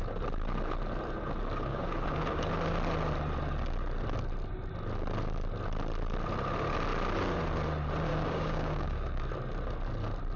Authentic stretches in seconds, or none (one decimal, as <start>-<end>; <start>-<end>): 0.0-1.7; 2.5-8.1; 9.2-10.4

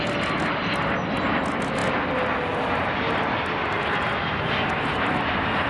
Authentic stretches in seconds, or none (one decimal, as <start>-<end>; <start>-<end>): 0.0-5.7

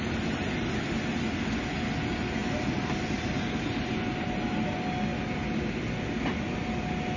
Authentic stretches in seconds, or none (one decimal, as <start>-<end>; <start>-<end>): 0.0-7.2